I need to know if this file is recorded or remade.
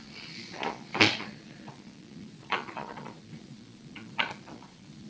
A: remade